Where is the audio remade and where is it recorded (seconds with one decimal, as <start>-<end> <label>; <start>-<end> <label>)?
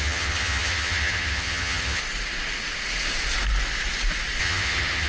0.0-2.0 remade; 2.0-4.4 recorded; 4.4-5.1 remade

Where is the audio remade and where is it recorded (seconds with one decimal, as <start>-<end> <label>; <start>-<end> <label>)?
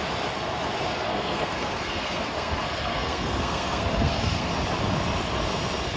0.0-0.9 recorded; 0.9-4.5 remade; 4.5-6.0 recorded